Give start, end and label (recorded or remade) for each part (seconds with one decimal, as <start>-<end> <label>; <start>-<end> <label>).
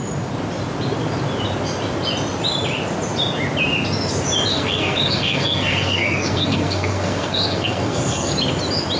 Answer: 0.0-4.5 recorded; 4.5-8.3 remade; 8.3-9.0 recorded